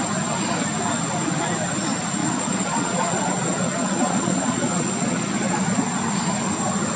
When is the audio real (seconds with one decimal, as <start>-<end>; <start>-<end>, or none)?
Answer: 0.0-2.2; 6.0-7.0